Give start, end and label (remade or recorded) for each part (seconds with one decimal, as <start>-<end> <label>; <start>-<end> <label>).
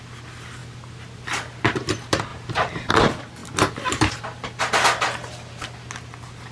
0.0-6.5 recorded